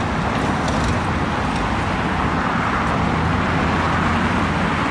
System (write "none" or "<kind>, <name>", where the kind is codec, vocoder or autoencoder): none